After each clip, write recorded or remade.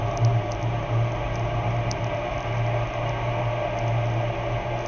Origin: recorded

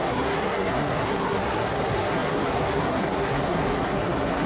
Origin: remade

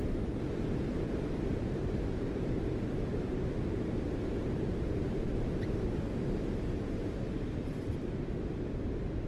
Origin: remade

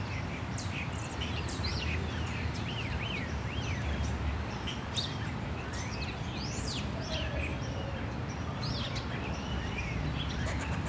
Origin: remade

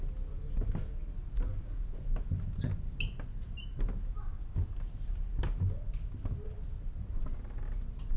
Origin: recorded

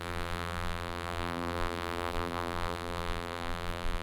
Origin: remade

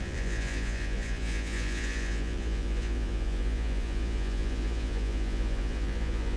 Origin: remade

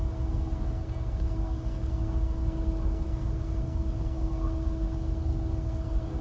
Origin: remade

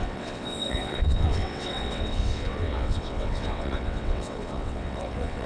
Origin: remade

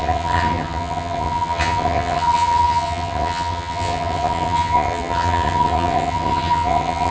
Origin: remade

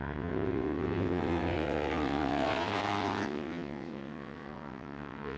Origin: remade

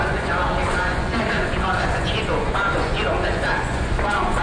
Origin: remade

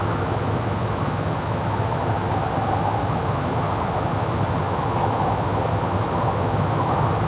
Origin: remade